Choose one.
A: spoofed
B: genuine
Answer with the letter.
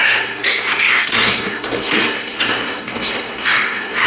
A